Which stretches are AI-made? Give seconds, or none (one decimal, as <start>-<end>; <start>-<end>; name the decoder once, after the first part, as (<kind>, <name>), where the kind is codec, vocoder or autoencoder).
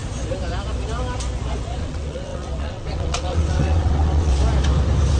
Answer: 1.8-4.4 (vocoder, WaveNeXt)